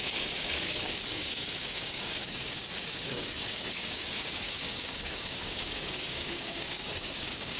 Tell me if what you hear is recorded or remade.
remade